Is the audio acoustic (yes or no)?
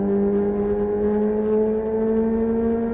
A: yes